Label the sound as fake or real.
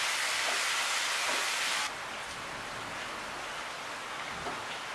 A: real